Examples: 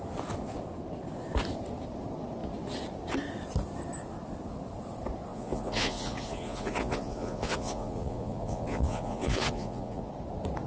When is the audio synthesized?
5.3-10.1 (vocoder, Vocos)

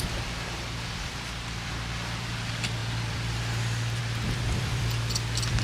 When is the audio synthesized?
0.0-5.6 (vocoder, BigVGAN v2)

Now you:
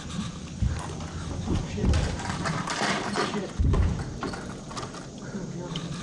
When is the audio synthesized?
1.6-3.5 (vocoder, BigVGAN v2)